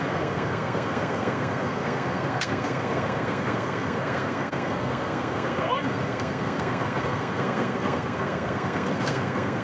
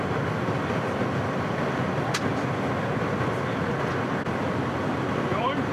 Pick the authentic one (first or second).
second